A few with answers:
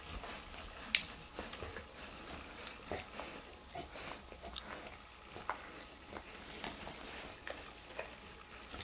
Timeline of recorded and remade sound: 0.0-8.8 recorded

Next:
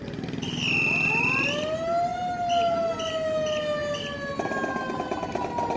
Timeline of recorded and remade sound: 0.0-5.8 recorded

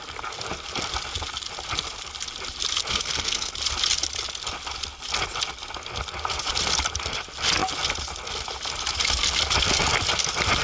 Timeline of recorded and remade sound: 0.0-2.9 recorded; 2.9-3.5 remade; 3.5-10.6 recorded